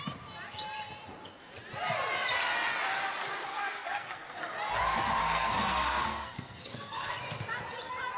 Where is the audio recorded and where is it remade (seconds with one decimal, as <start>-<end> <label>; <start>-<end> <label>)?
0.0-3.5 recorded; 3.5-4.4 remade; 4.4-5.3 recorded; 5.3-7.2 remade; 7.2-8.2 recorded